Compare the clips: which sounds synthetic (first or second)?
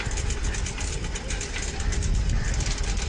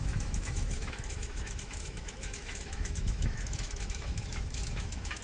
second